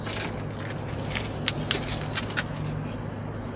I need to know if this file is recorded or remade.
recorded